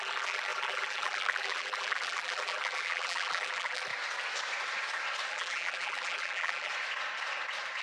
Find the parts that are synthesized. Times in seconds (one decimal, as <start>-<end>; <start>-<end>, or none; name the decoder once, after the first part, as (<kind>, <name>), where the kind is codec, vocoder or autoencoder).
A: 0.0-3.9 (vocoder, BigVGAN v2); 5.3-6.7